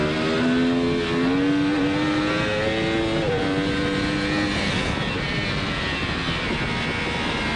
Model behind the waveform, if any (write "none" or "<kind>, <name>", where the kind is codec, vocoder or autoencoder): none